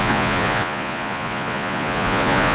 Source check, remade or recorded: remade